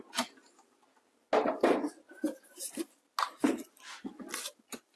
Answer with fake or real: real